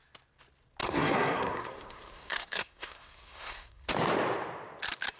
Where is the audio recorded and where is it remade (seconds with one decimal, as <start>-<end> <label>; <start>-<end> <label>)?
0.0-0.8 recorded; 0.8-3.9 remade; 3.9-5.2 recorded